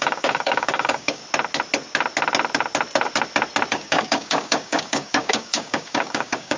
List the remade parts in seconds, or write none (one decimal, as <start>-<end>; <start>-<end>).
0.0-1.2; 3.7-6.6